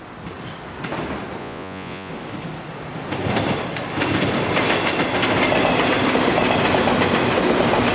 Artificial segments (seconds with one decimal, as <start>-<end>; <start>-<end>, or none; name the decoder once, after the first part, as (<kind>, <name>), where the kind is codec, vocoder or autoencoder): 1.4-2.1 (vocoder, Vocos)